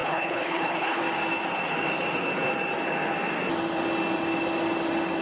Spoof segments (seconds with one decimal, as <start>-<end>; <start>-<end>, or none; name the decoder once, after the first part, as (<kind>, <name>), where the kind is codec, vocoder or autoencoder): 0.0-1.0 (codec, HILCodec)